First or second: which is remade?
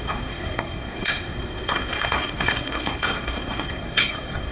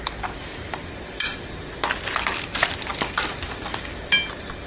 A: first